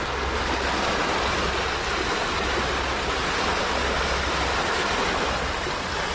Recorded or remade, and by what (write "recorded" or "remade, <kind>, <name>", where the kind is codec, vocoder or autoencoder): recorded